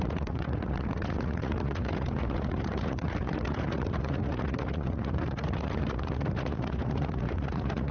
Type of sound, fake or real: fake